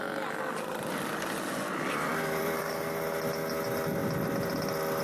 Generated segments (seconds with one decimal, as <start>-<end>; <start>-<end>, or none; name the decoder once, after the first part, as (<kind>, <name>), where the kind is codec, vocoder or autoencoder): 2.1-2.6 (vocoder, BigVGAN v2)

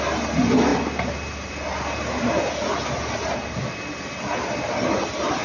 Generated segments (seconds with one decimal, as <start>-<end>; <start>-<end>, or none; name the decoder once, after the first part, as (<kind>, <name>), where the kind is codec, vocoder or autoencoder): none